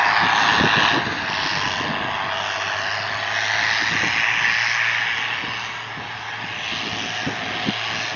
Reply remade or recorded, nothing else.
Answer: recorded